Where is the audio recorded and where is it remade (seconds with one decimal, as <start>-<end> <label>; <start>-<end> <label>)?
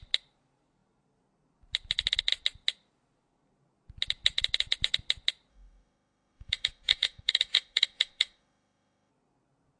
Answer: 0.0-5.5 recorded; 5.5-9.1 remade; 9.1-9.8 recorded